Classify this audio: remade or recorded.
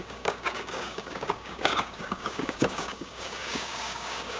remade